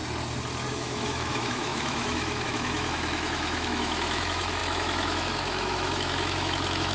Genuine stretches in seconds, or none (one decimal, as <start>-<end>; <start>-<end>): 0.0-0.7